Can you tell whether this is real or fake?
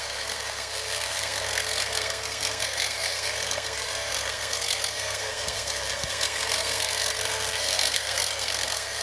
fake